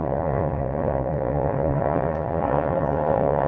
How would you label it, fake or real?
fake